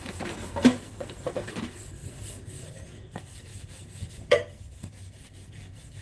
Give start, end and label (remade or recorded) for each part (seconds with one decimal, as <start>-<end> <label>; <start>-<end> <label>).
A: 0.0-6.0 remade